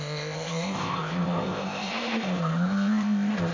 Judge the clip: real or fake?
fake